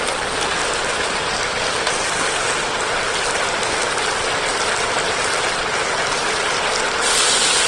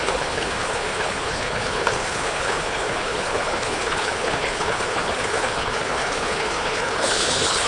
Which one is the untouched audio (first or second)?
first